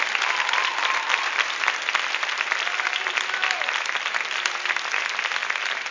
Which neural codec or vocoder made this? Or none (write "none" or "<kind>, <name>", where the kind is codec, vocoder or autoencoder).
none